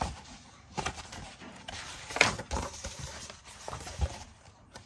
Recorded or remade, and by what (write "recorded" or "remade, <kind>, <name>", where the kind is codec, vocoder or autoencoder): remade, vocoder, BigVGAN v2